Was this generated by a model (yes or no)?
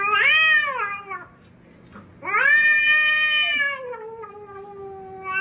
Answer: no